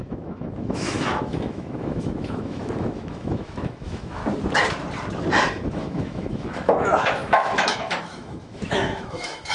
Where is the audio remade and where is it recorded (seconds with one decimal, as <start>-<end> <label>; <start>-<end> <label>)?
0.0-4.2 remade; 4.2-5.5 recorded; 5.5-9.5 remade